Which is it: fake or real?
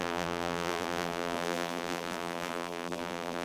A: fake